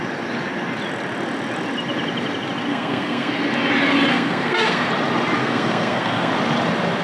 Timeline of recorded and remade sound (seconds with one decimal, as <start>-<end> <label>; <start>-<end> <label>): 0.0-2.7 recorded; 2.7-3.3 remade; 3.3-4.1 recorded; 4.1-4.9 remade; 4.9-5.4 recorded; 5.4-6.3 remade; 6.3-7.0 recorded